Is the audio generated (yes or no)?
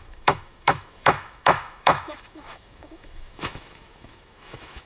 yes